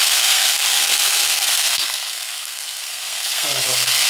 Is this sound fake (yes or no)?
yes